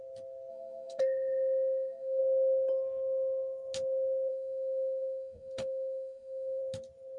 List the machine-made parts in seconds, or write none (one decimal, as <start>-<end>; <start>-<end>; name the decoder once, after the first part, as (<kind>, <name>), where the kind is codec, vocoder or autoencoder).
0.5-2.2 (autoencoder, DAC-VAE); 4.3-6.6

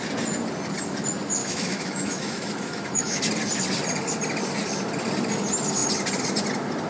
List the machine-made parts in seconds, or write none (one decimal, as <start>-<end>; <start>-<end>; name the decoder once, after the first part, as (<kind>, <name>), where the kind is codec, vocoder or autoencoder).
1.4-3.2 (autoencoder, DAC-VAE)

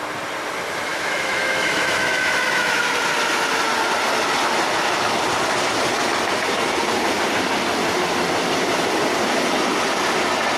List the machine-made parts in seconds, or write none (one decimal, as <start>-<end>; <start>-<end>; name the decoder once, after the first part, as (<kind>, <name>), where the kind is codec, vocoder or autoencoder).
0.9-2.8 (autoencoder, DAC-VAE)

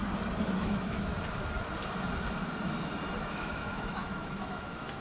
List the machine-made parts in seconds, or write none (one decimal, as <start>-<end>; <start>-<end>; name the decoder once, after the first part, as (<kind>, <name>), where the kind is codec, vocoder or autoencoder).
0.6-1.1 (autoencoder, DAC-VAE); 3.3-5.0

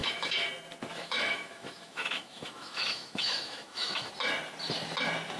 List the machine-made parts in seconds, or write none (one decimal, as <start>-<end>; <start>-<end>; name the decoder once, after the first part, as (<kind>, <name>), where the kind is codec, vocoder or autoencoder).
0.0-0.5 (autoencoder, DAC-VAE); 0.9-4.1